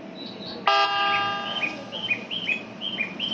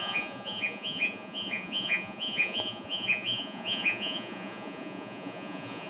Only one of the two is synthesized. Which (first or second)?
second